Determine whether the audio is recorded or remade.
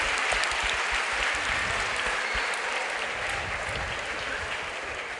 recorded